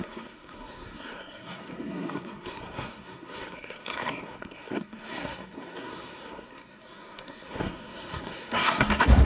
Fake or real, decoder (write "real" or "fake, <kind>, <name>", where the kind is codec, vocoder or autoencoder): fake, codec, SNAC